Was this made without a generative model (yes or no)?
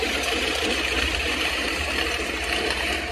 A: no